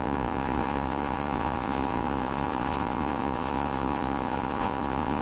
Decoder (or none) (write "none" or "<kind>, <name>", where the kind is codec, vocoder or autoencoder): vocoder, Vocos